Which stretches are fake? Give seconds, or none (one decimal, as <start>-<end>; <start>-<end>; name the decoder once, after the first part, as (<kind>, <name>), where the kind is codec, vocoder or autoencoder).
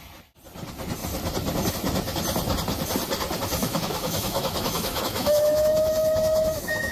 3.6-6.9 (autoencoder, DAC-VAE)